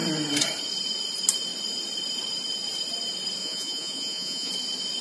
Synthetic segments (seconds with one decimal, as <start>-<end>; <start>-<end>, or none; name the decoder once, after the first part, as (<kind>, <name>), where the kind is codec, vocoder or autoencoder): 3.4-4.5 (vocoder, Vocos)